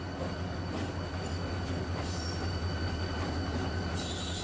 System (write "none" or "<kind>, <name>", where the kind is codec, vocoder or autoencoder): none